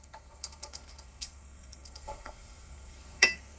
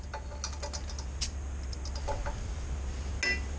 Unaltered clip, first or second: second